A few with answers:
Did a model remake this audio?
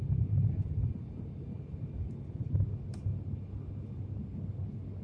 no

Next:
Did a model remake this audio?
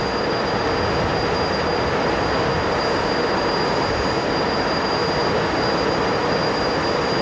no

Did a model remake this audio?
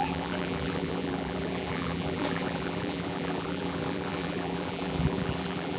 yes